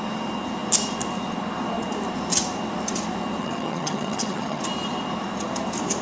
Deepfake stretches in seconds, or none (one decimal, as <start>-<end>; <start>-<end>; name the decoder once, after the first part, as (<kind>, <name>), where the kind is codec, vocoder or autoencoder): 3.4-4.6 (vocoder, HiFi-GAN)